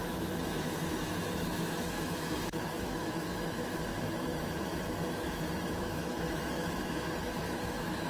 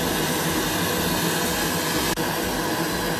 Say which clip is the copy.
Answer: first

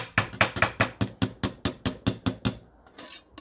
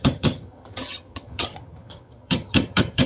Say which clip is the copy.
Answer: second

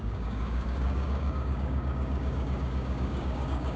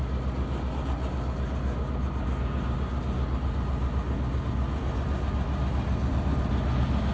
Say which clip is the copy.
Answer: first